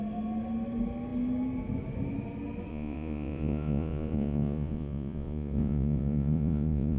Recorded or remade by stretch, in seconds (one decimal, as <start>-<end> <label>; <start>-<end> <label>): 0.0-2.7 recorded; 2.7-7.0 remade